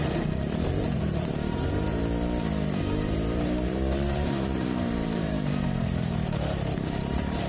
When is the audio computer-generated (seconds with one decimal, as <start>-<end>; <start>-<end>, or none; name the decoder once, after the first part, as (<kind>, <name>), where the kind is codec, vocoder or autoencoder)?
0.0-2.0 (vocoder, BigVGAN v2); 2.8-7.5